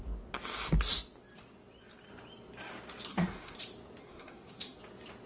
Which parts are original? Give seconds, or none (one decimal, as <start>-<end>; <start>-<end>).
0.0-3.1; 3.6-4.0; 4.8-5.3